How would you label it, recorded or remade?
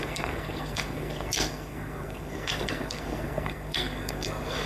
remade